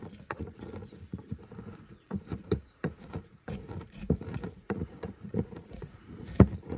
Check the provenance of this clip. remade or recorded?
remade